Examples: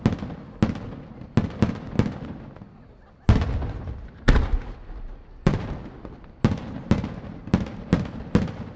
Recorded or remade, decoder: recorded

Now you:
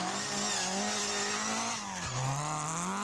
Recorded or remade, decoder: recorded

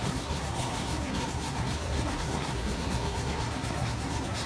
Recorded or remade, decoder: remade, codec, SNAC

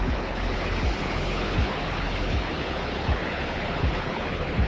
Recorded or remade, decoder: remade, codec, HILCodec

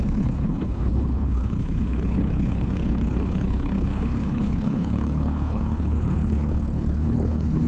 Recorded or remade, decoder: remade, codec, HILCodec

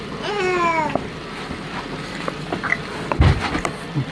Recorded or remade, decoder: recorded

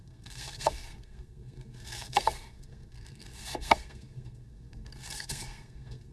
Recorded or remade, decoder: remade, codec, SNAC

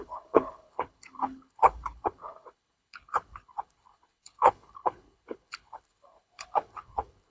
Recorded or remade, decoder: remade, codec, HILCodec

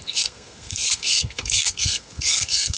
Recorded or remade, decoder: remade, codec, SNAC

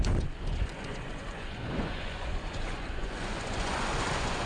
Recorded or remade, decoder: remade, vocoder, Vocos